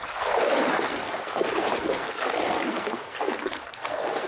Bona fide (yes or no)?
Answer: no